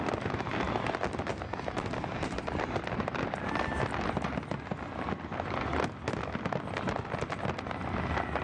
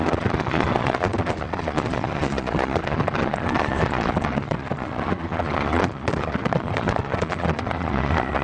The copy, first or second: second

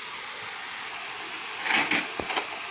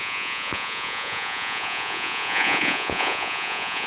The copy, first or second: second